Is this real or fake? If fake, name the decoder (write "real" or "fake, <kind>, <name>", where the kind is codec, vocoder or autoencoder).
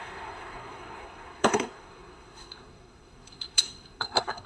fake, codec, SNAC